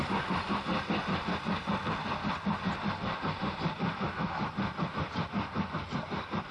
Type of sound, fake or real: real